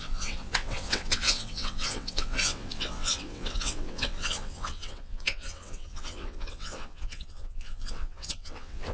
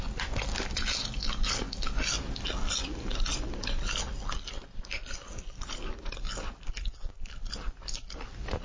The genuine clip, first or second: second